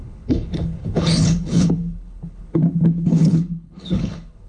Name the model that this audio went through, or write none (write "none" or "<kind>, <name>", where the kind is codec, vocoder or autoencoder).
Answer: codec, HILCodec